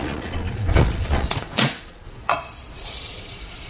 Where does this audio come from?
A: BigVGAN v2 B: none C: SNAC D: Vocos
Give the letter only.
D